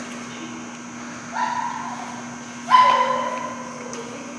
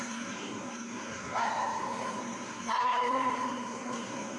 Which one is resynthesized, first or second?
second